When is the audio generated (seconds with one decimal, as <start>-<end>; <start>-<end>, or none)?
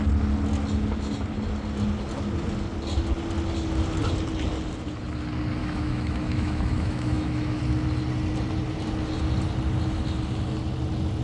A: 5.6-7.6